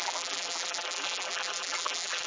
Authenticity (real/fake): fake